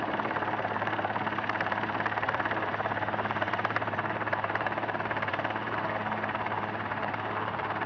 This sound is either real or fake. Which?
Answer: fake